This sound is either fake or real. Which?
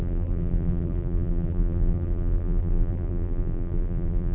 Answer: fake